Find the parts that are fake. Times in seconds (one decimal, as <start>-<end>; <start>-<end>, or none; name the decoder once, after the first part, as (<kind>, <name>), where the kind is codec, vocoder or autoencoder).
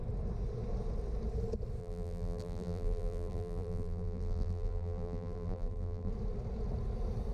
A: 1.8-6.1 (vocoder, BigVGAN v2)